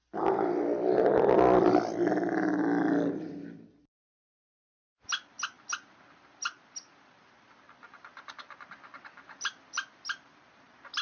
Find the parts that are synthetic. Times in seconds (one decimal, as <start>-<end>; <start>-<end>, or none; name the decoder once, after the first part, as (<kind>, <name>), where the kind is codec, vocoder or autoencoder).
3.8-11.0 (vocoder, BigVGAN v2)